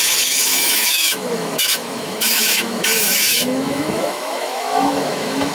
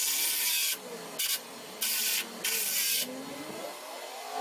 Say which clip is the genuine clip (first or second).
second